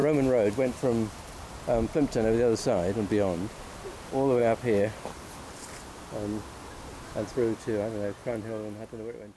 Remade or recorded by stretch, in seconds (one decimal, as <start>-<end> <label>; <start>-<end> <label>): 0.0-9.4 recorded

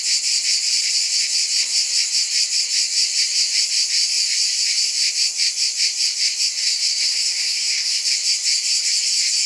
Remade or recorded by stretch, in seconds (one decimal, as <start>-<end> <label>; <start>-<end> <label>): 0.0-6.6 recorded; 6.6-8.0 remade; 8.0-9.5 recorded

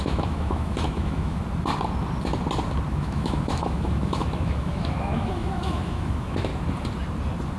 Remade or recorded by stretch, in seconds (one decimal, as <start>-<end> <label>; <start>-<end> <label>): 0.0-1.4 remade; 1.4-2.9 recorded; 2.9-6.5 remade; 6.5-7.6 recorded

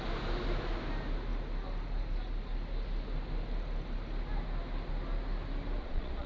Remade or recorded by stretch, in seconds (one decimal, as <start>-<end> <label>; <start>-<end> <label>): 0.0-5.8 recorded; 5.8-6.3 remade

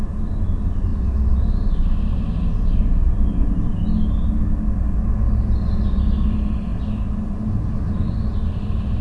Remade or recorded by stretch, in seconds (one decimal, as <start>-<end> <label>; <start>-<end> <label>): 0.0-9.0 recorded

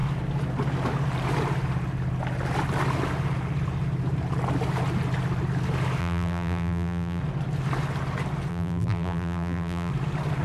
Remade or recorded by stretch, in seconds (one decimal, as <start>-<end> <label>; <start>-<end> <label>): 0.0-6.0 recorded; 6.0-7.2 remade; 7.2-8.5 recorded; 8.5-9.9 remade; 9.9-10.4 recorded

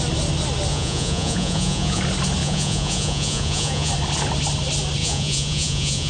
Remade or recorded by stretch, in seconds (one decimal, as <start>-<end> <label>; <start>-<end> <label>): 0.0-0.7 recorded; 0.7-2.0 remade; 2.0-2.4 recorded; 2.4-3.9 remade; 3.9-5.0 recorded; 5.0-6.1 remade